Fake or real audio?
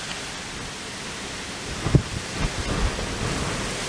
real